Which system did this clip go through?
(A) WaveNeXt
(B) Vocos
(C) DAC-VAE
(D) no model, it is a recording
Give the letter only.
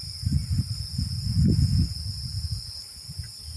D